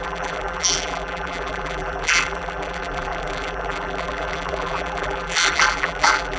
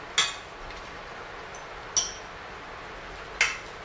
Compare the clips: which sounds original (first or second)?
second